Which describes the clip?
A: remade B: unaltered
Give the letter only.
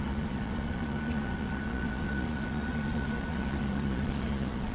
A